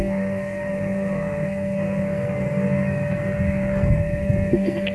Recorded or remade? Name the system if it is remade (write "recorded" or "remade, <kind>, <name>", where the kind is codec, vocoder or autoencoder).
remade, codec, SNAC